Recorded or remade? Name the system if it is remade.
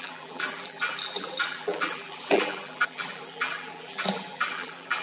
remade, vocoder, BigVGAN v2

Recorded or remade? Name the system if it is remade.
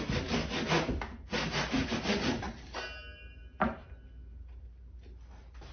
recorded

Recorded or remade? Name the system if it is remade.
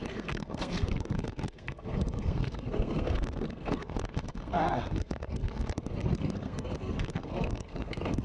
remade, codec, SNAC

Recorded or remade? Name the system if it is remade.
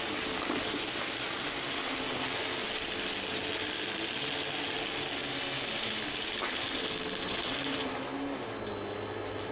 recorded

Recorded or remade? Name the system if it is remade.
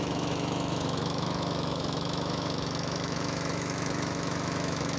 remade, autoencoder, DAC-VAE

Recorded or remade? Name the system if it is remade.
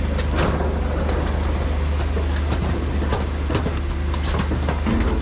recorded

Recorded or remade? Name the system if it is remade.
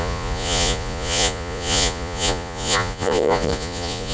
remade, vocoder, Vocos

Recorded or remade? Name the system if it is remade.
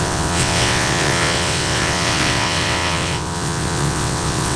remade, vocoder, WaveNeXt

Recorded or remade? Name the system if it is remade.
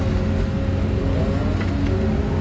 recorded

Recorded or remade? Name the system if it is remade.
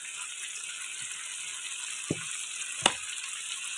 recorded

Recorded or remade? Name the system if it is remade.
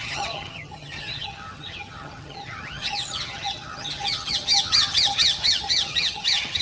remade, vocoder, HiFi-GAN